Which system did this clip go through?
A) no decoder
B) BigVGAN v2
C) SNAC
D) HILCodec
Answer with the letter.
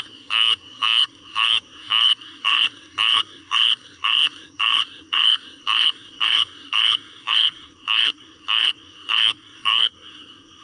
C